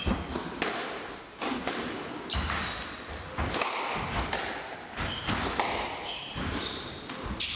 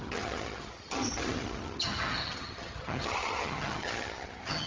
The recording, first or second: first